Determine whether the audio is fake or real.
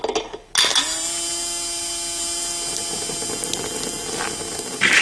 real